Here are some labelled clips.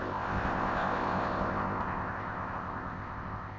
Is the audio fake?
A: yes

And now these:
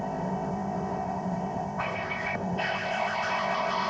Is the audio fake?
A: yes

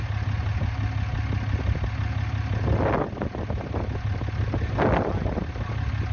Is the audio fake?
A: no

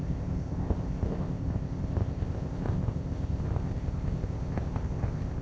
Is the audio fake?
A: yes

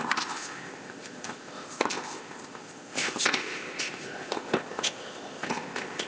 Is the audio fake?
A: yes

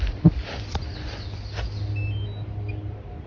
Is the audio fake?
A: no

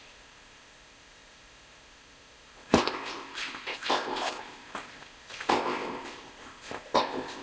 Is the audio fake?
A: yes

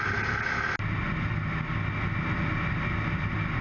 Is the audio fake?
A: no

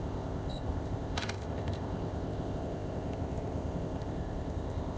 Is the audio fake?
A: yes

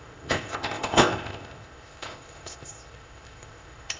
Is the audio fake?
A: yes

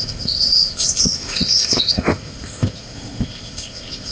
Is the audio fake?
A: yes